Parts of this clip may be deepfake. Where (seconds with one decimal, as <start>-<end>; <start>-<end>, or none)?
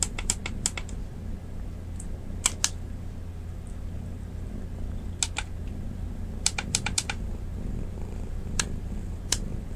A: 0.0-0.4; 5.6-9.8